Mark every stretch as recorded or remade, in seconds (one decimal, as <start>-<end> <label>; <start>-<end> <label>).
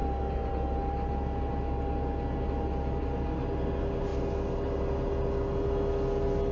0.0-6.5 recorded